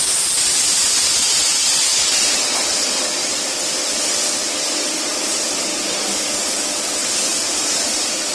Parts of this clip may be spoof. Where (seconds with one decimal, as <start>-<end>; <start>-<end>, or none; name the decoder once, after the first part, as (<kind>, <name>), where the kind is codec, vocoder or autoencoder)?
1.6-2.3 (vocoder, BigVGAN v2); 3.2-3.7; 5.1-5.8; 7.0-7.5